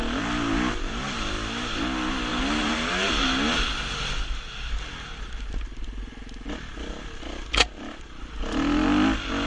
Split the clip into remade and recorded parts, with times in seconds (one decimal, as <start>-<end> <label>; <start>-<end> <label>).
0.0-2.3 recorded; 2.3-3.1 remade; 3.1-9.5 recorded